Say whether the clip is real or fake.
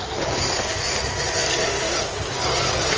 real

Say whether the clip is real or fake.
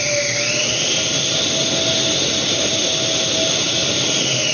real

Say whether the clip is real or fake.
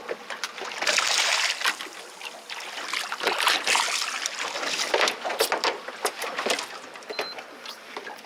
real